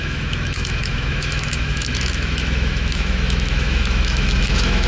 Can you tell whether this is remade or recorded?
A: remade